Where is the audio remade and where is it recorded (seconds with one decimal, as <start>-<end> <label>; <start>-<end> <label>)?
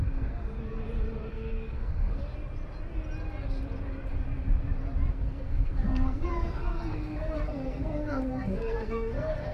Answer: 0.0-0.5 remade; 0.5-1.3 recorded; 1.3-2.2 remade; 2.2-5.1 recorded; 5.1-9.5 remade